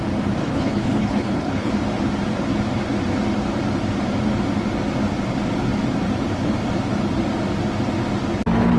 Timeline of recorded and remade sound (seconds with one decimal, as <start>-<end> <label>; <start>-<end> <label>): 0.0-0.4 recorded; 0.4-1.7 remade; 1.7-8.8 recorded